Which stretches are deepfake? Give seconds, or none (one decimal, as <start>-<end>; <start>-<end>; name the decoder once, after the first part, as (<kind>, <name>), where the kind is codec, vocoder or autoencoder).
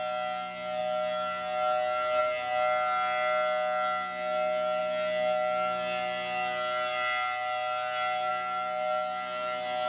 none